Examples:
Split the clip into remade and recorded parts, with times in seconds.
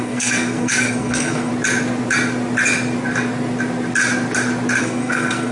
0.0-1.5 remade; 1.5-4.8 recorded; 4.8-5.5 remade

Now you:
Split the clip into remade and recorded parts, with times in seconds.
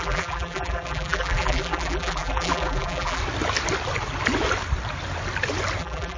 0.0-3.2 remade; 3.2-5.8 recorded; 5.8-6.2 remade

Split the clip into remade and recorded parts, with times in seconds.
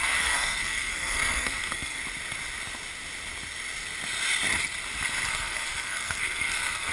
0.0-2.0 remade; 2.0-5.3 recorded; 5.3-6.9 remade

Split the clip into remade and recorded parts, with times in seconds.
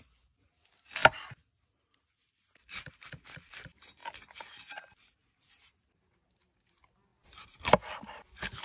0.0-8.6 recorded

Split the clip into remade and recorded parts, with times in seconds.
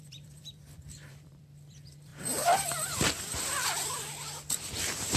0.0-5.2 remade